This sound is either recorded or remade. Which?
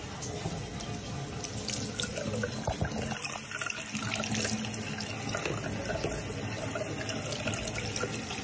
recorded